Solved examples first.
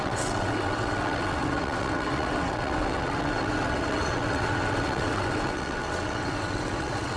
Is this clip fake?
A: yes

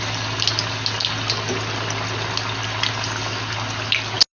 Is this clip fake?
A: no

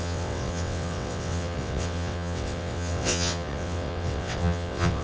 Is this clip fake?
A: yes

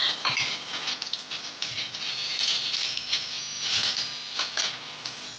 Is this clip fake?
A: no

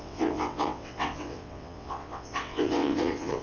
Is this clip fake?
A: yes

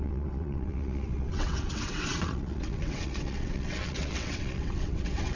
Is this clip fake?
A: yes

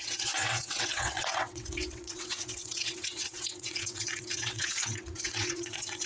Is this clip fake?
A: yes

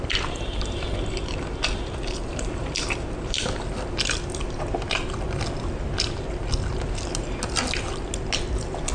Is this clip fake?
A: no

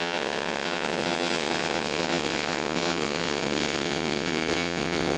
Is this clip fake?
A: yes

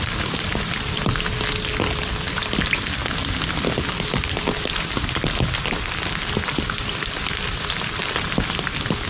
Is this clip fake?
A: no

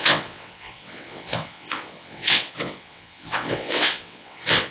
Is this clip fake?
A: yes